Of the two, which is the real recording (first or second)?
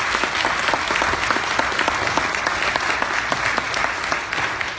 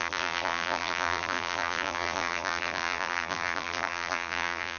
first